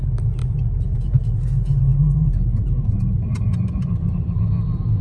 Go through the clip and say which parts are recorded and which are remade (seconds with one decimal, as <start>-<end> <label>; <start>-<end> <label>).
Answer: 0.0-0.4 recorded; 0.4-1.5 remade; 1.5-1.9 recorded; 1.9-4.3 remade; 4.3-5.0 recorded

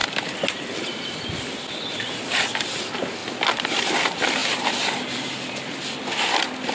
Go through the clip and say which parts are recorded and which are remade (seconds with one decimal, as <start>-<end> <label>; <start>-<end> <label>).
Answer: 0.0-3.2 remade; 3.2-4.0 recorded; 4.0-6.7 remade

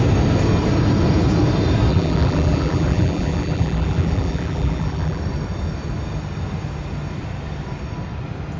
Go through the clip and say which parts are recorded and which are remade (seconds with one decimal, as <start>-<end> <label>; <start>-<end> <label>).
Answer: 0.0-1.9 recorded; 1.9-5.2 remade; 5.2-8.6 recorded

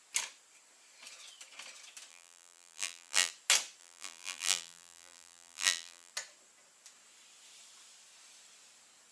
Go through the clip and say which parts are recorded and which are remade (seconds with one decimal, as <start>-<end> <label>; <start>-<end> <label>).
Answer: 0.0-2.1 recorded; 2.1-3.3 remade; 3.3-3.8 recorded; 3.8-6.1 remade; 6.1-9.1 recorded

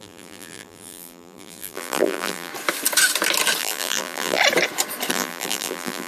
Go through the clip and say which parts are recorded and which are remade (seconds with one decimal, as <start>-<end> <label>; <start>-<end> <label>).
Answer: 0.0-2.5 remade; 2.5-3.6 recorded; 3.6-4.4 remade; 4.4-5.1 recorded; 5.1-6.1 remade

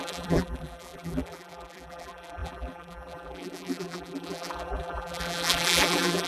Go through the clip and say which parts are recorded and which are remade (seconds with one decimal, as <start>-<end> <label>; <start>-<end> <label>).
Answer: 0.0-6.3 remade

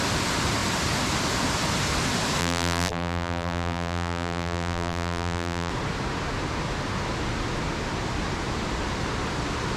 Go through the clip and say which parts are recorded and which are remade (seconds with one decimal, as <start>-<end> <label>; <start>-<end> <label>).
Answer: 0.0-2.4 recorded; 2.4-5.7 remade; 5.7-9.8 recorded